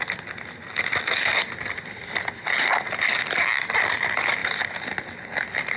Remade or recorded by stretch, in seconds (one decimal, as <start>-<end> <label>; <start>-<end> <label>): 0.0-4.4 recorded; 4.4-5.0 remade; 5.0-5.8 recorded